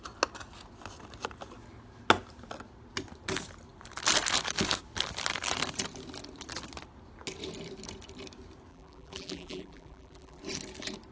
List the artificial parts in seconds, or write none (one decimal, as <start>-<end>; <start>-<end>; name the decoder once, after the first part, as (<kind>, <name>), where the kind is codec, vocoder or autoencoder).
8.7-10.4 (vocoder, BigVGAN v2)